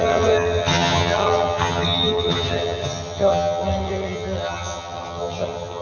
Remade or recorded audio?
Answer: remade